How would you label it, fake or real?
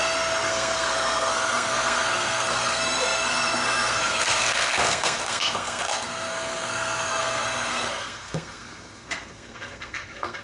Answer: fake